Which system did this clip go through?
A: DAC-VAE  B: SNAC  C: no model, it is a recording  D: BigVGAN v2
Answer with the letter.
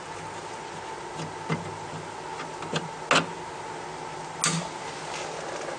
C